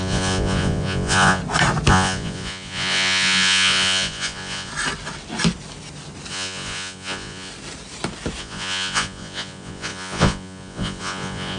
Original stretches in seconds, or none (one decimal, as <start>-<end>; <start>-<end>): 1.4-1.9; 4.7-6.3; 7.5-8.4